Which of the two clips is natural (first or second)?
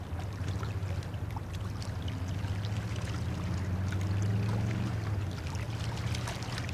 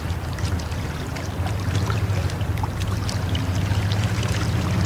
first